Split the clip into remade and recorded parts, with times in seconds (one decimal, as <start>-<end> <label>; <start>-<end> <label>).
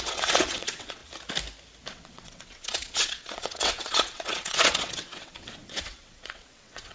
0.0-1.0 remade; 1.0-1.9 recorded; 1.9-6.9 remade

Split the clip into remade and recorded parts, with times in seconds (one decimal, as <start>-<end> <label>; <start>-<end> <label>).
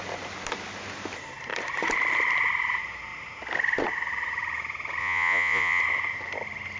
0.0-5.0 recorded; 5.0-5.8 remade; 5.8-6.8 recorded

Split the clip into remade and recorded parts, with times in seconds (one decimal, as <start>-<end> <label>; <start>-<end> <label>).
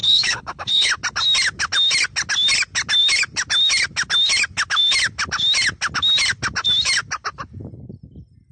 0.0-0.9 remade; 0.9-8.5 recorded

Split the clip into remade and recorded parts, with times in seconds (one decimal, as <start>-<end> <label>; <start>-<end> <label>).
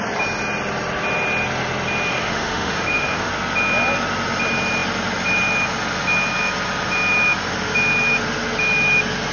0.0-2.1 recorded; 2.1-3.3 remade; 3.3-9.3 recorded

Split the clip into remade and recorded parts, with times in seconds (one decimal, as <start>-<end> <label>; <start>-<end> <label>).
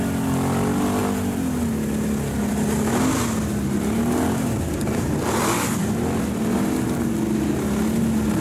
0.0-8.4 recorded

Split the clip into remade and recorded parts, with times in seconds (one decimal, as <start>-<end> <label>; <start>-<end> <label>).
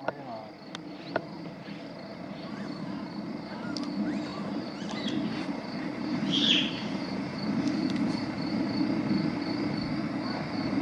0.0-2.1 recorded; 2.1-2.6 remade; 2.6-4.3 recorded; 4.3-7.1 remade; 7.1-10.8 recorded